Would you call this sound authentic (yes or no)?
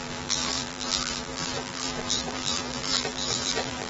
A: no